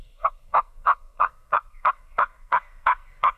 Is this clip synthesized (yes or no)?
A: yes